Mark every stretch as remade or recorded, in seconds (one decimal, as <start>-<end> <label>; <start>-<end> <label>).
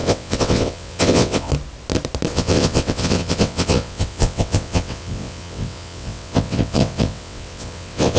0.0-1.5 remade; 1.5-2.3 recorded; 2.3-8.2 remade